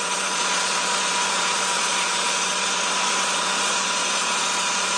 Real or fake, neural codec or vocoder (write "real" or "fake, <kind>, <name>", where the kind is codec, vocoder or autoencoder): fake, vocoder, Vocos